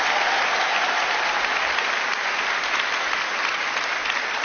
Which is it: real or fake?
real